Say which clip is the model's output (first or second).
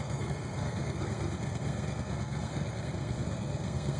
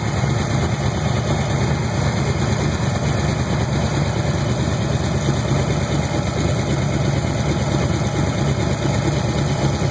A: first